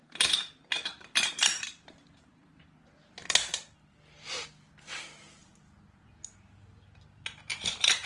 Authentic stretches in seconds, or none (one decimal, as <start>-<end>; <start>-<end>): 2.6-7.5